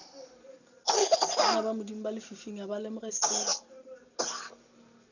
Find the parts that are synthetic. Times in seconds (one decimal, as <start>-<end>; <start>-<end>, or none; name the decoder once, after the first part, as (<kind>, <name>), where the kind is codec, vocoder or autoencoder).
none